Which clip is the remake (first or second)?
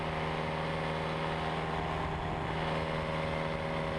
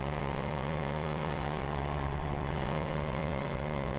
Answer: second